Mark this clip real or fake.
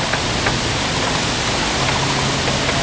real